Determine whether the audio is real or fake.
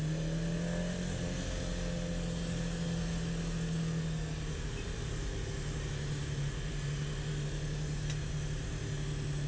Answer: real